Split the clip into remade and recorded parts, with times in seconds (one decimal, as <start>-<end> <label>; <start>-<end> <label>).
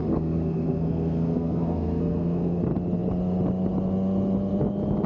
0.0-2.6 remade; 2.6-5.1 recorded